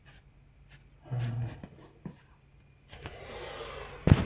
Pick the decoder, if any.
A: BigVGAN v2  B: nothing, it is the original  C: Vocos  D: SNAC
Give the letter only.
B